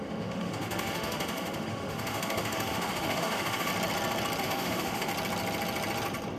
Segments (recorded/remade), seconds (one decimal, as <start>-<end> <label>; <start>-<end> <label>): 0.0-3.7 remade; 3.7-4.4 recorded; 4.4-5.1 remade; 5.1-6.4 recorded